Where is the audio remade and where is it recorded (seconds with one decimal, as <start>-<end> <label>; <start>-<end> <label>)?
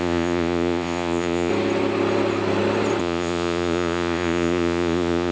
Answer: 0.0-1.5 remade; 1.5-3.0 recorded; 3.0-5.3 remade